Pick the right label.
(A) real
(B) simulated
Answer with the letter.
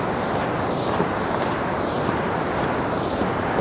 A